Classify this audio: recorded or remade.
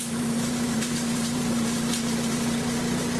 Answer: remade